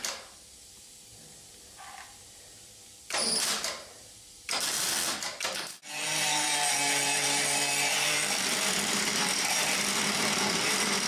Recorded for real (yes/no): no